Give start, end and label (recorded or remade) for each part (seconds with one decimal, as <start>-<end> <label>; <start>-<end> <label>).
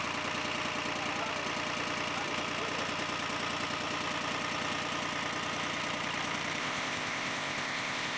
0.0-6.6 recorded; 6.6-8.2 remade